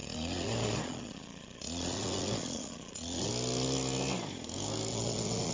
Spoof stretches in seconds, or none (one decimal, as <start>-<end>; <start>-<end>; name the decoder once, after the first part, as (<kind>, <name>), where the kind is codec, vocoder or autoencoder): 0.0-3.3 (vocoder, Vocos); 4.9-5.5